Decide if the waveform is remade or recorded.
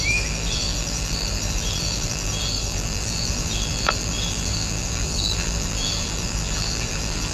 remade